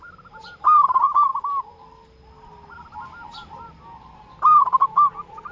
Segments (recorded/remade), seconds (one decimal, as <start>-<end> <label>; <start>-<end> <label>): 0.0-5.5 recorded